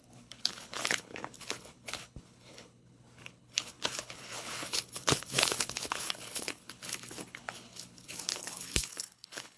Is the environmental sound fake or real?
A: fake